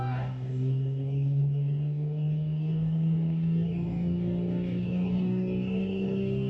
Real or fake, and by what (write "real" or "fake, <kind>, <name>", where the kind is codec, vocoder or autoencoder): fake, codec, DAC